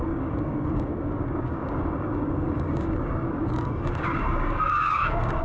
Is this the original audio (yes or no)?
no